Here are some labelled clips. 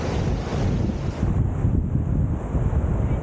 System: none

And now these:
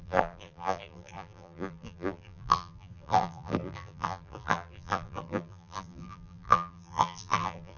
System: vocoder, BigVGAN v2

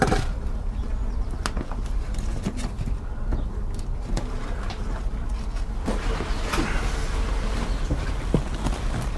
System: none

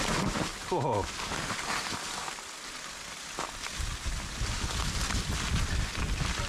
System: none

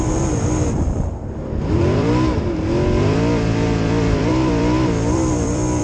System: vocoder, BigVGAN v2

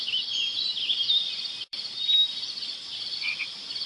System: vocoder, BigVGAN v2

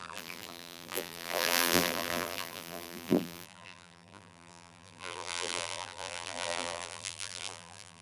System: vocoder, BigVGAN v2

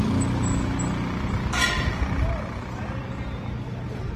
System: none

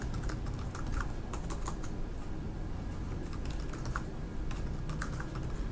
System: none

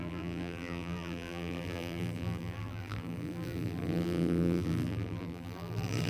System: vocoder, BigVGAN v2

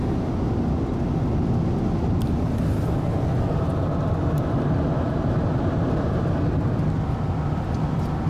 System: none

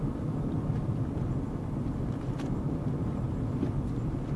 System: vocoder, BigVGAN v2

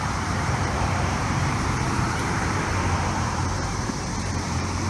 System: vocoder, BigVGAN v2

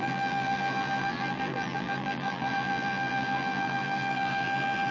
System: vocoder, BigVGAN v2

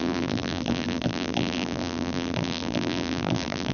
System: vocoder, BigVGAN v2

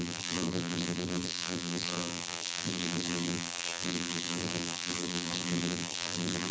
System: vocoder, BigVGAN v2